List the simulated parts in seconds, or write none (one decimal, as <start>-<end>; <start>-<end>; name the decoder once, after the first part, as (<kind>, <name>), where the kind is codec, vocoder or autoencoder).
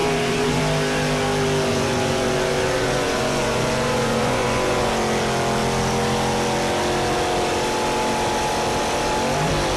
0.0-0.6 (vocoder, Vocos); 1.7-4.9